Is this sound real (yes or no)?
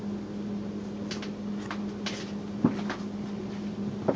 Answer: yes